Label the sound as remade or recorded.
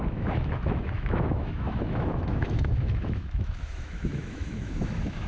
remade